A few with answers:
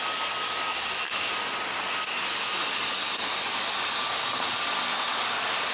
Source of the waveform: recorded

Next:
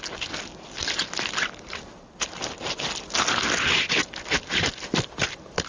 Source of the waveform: recorded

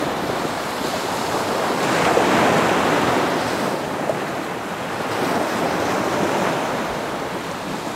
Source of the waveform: recorded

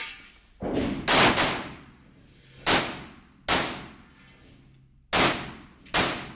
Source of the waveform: recorded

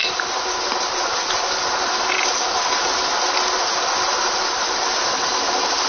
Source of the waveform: recorded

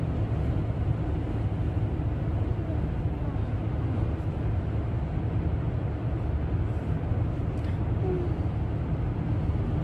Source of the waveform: recorded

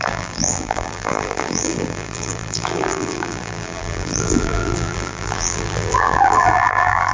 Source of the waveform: remade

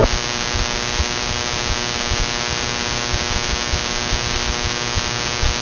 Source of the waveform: recorded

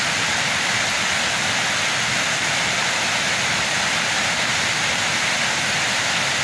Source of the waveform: recorded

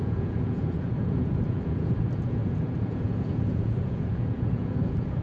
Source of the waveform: remade